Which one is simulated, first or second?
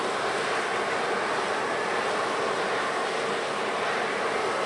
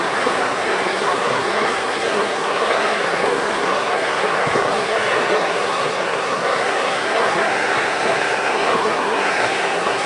second